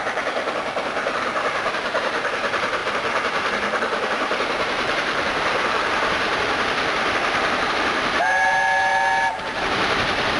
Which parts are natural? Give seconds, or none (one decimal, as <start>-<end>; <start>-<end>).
8.9-9.6